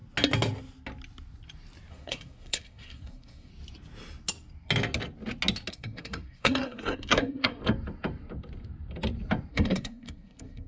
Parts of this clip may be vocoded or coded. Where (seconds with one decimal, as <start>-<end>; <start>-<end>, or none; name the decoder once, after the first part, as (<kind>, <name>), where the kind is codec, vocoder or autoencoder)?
1.9-3.5 (codec, SNAC); 5.7-7.6; 9.5-10.7